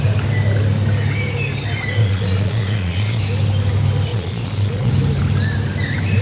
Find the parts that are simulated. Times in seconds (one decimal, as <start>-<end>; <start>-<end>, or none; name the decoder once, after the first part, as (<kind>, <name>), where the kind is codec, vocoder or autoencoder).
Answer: 2.0-3.2 (vocoder, Vocos); 4.1-4.9